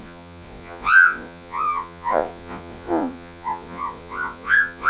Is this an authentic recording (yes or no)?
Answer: no